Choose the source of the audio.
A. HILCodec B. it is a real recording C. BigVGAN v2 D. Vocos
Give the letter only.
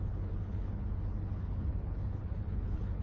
A